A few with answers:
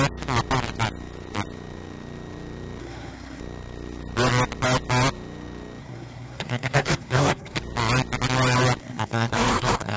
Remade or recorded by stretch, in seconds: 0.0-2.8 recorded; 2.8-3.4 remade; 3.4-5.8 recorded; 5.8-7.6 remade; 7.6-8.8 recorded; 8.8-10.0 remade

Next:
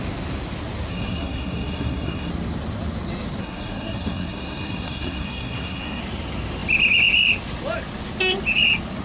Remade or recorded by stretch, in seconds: 0.0-0.9 recorded; 0.9-2.3 remade; 2.3-3.4 recorded; 3.4-6.0 remade; 6.0-9.0 recorded